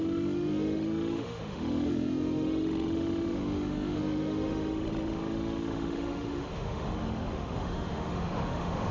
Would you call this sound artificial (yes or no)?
yes